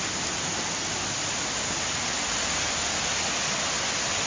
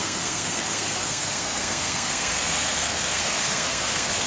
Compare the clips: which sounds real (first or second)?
first